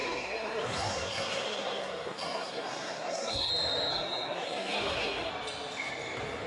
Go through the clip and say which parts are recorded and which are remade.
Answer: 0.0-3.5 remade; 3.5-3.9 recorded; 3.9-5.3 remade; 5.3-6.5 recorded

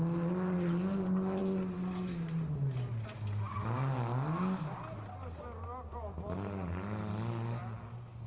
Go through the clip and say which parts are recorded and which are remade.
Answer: 0.0-8.3 recorded